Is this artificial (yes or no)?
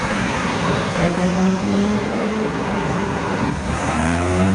yes